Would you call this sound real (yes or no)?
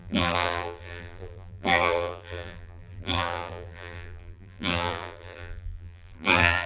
no